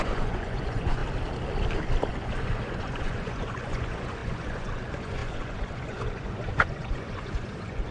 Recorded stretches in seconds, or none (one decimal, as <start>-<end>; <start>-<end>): 1.0-2.1